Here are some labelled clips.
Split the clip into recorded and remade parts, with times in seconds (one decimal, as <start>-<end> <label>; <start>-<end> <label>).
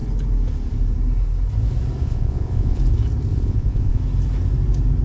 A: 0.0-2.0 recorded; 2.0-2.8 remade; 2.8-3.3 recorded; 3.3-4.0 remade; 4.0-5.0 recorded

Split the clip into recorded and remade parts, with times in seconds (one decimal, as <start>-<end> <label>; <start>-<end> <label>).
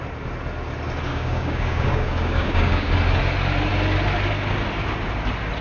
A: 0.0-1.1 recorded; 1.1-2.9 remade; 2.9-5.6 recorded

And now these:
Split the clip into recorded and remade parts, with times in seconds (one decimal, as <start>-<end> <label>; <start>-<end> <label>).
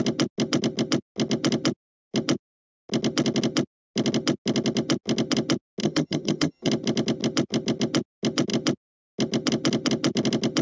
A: 0.0-5.8 recorded; 5.8-6.7 remade; 6.7-10.6 recorded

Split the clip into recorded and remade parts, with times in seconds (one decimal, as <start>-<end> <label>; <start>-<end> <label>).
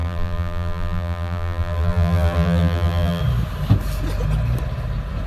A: 0.0-3.2 remade; 3.2-5.3 recorded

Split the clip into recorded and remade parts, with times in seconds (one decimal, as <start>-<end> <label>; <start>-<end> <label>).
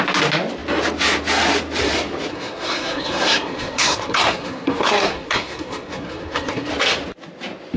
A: 0.0-2.3 recorded; 2.3-6.7 remade; 6.7-7.8 recorded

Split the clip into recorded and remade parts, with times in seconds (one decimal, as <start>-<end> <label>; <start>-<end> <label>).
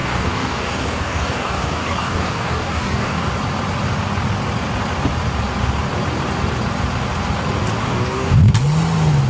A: 0.0-3.3 remade; 3.3-7.8 recorded; 7.8-8.5 remade; 8.5-9.3 recorded